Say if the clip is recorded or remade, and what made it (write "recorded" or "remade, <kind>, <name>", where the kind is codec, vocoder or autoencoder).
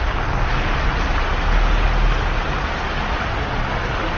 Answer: recorded